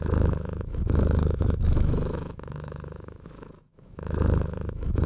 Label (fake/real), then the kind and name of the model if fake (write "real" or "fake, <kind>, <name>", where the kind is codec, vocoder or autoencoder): fake, autoencoder, DAC-VAE